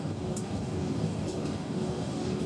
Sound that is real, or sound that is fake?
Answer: fake